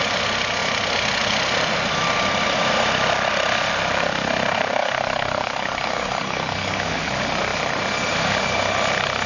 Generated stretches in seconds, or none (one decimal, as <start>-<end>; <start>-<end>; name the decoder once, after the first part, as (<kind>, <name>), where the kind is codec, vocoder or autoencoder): 4.8-7.1 (codec, DAC)